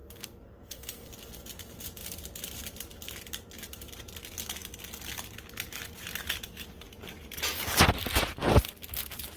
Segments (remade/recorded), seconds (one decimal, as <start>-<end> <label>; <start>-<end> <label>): 0.0-1.1 remade; 1.1-9.4 recorded